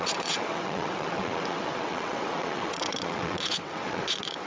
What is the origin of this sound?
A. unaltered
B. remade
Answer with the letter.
B